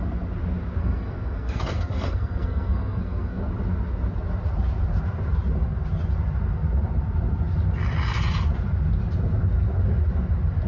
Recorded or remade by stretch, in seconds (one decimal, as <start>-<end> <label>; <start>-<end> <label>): 0.0-0.8 recorded; 0.8-3.4 remade; 3.4-10.7 recorded